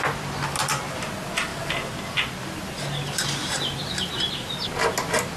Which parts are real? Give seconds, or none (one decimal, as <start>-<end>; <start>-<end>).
0.0-3.4; 4.1-5.4